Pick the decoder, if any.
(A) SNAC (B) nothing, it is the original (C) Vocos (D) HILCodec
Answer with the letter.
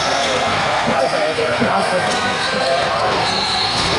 A